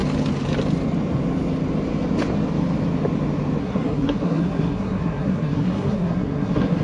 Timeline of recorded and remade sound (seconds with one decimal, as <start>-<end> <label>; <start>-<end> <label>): 0.0-3.6 recorded; 3.6-6.8 remade

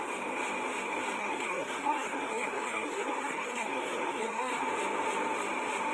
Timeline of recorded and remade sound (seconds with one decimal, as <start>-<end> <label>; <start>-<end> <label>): 0.0-1.2 recorded; 1.2-4.7 remade; 4.7-5.9 recorded

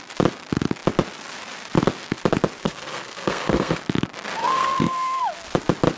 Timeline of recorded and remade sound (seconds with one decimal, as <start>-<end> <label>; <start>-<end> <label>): 0.0-2.6 recorded; 2.6-3.8 remade; 3.8-4.4 recorded; 4.4-5.2 remade; 5.2-6.0 recorded

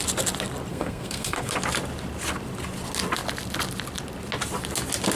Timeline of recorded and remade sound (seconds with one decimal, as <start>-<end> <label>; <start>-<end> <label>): 0.0-0.7 recorded; 0.7-1.5 remade; 1.5-5.2 recorded